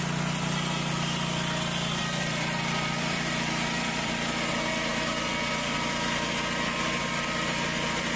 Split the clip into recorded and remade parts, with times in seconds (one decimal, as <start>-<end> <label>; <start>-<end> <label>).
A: 0.0-2.0 recorded; 2.0-4.5 remade; 4.5-8.2 recorded

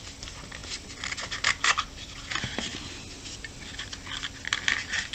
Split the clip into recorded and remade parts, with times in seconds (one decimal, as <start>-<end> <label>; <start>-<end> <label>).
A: 0.0-2.7 recorded; 2.7-3.5 remade; 3.5-5.1 recorded

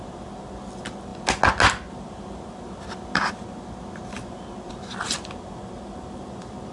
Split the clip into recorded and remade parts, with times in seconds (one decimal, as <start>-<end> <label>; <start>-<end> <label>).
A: 0.0-6.7 recorded